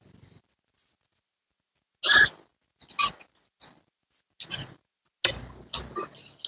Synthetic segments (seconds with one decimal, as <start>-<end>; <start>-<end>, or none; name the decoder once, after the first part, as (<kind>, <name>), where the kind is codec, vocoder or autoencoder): none